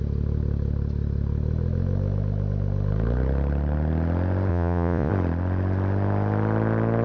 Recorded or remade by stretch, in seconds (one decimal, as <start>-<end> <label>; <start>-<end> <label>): 0.0-4.5 recorded; 4.5-5.1 remade; 5.1-7.0 recorded